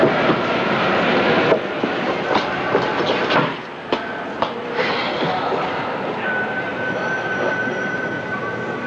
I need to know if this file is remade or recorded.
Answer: recorded